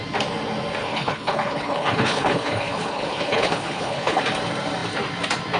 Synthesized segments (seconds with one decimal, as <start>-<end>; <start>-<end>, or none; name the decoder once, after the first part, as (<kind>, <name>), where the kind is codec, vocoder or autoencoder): 0.8-4.2 (codec, HILCodec)